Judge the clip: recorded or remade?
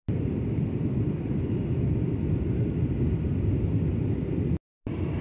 recorded